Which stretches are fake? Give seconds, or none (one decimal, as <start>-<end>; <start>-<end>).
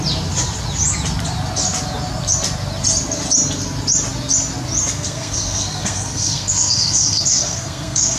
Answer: 4.8-8.2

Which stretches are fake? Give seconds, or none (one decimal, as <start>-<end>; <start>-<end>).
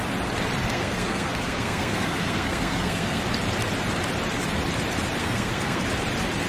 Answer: 0.7-3.2; 5.2-5.8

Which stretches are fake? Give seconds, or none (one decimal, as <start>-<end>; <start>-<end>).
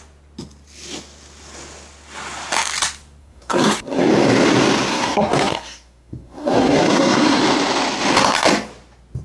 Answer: 3.2-4.1; 4.9-7.4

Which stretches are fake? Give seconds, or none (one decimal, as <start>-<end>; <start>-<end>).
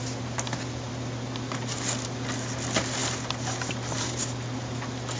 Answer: none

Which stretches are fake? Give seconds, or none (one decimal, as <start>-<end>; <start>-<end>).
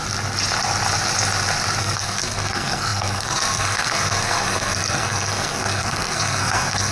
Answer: 1.8-6.9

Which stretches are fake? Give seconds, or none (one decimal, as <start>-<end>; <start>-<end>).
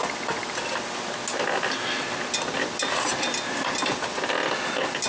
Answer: none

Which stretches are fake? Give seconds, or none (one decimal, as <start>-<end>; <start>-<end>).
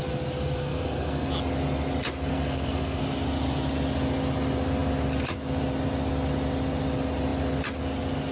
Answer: 0.6-1.3; 2.3-3.0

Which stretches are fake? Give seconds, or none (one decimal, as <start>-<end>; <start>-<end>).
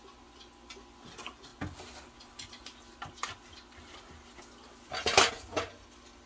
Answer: none